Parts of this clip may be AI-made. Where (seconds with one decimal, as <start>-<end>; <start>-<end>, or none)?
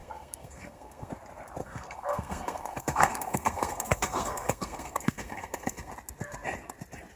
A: 0.0-1.1; 1.6-5.9